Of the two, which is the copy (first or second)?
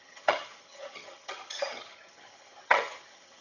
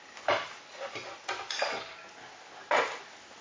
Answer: first